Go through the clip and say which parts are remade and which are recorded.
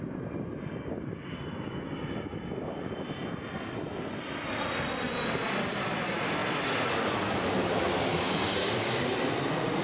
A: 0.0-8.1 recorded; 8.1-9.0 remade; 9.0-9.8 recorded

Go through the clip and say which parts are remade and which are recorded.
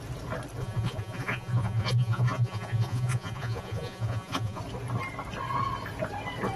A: 0.0-0.6 recorded; 0.6-4.6 remade; 4.6-6.6 recorded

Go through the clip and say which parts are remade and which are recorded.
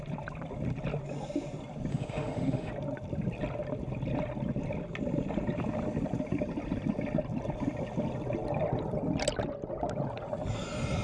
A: 0.0-1.9 recorded; 1.9-2.7 remade; 2.7-11.0 recorded